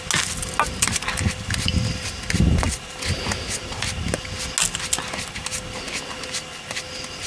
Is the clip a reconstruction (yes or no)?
no